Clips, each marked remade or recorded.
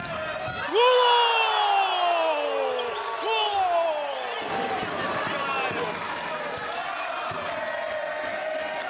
recorded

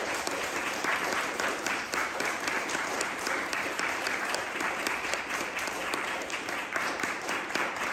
remade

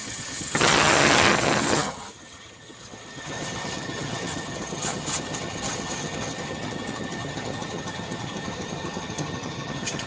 remade